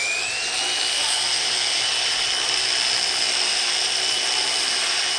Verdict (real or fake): real